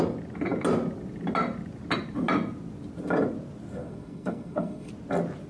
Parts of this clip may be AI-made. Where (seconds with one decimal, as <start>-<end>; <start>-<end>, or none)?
3.8-4.9